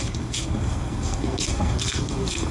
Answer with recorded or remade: remade